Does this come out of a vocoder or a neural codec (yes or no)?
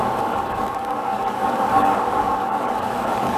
yes